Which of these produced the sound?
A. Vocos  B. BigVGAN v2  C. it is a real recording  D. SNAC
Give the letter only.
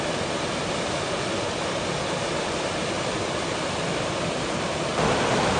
C